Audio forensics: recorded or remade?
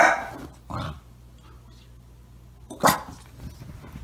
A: recorded